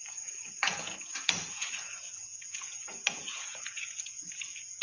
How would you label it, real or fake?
fake